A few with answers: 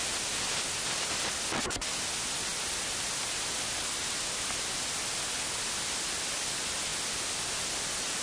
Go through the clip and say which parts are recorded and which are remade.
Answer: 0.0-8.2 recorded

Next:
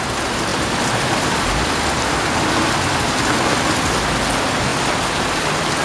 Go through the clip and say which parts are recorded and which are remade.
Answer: 0.0-0.5 recorded; 0.5-3.9 remade; 3.9-5.8 recorded

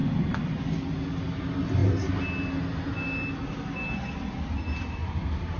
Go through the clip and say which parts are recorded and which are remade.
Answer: 0.0-0.6 remade; 0.6-5.0 recorded; 5.0-5.6 remade